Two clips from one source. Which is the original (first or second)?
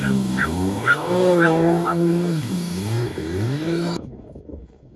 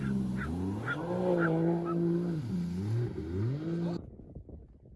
second